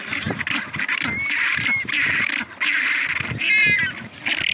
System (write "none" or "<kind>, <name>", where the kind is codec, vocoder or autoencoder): none